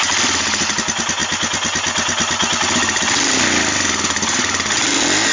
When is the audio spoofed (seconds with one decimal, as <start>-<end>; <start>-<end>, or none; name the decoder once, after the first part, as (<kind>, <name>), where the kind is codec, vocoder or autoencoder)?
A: none

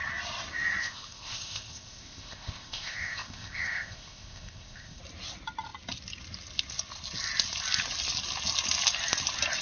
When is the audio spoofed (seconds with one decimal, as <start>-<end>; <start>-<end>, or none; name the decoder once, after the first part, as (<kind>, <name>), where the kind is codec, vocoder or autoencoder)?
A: 0.8-5.0 (codec, ZipCodec)

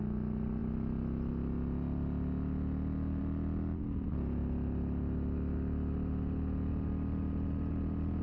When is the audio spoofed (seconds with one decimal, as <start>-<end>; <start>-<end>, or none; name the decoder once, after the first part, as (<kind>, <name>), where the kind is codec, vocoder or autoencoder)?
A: none

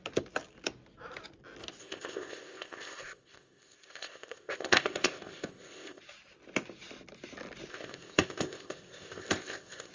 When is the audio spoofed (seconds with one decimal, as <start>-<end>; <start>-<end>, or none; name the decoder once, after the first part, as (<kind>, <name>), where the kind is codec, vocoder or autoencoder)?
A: 1.8-6.0 (codec, ZipCodec); 7.7-9.9

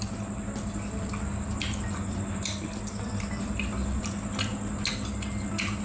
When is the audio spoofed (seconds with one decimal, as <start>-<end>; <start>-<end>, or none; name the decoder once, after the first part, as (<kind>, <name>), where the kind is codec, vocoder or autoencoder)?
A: none

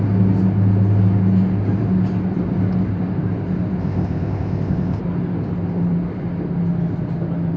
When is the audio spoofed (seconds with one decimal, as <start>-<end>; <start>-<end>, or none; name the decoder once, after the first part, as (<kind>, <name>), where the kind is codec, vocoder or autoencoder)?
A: 3.8-5.0 (codec, ZipCodec)

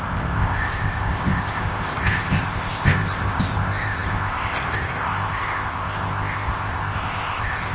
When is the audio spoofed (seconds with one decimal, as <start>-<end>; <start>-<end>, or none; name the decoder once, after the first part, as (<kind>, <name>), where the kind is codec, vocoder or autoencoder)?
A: 0.0-7.7 (codec, ZipCodec)